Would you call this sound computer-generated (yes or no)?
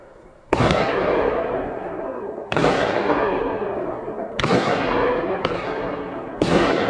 yes